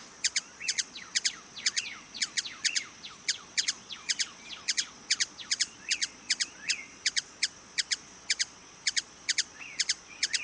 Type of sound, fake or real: fake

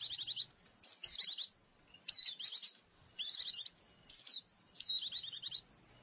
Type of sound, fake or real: real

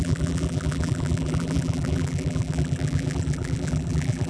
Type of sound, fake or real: fake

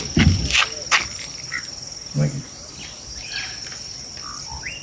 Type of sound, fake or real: real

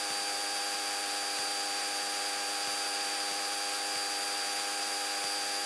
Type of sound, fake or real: real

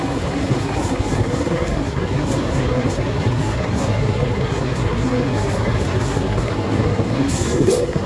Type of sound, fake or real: fake